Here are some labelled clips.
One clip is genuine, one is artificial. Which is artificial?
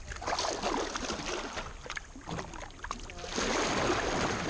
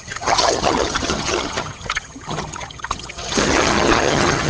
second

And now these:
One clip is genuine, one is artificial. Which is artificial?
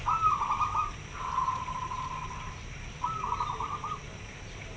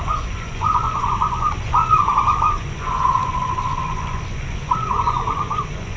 second